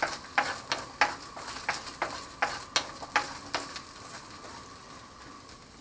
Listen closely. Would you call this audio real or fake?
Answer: real